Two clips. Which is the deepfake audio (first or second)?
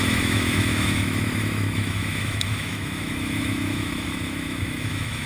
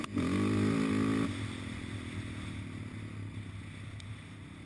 first